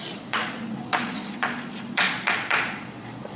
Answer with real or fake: fake